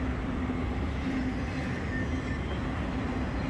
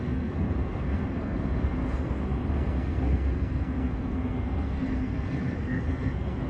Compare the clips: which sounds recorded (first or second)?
first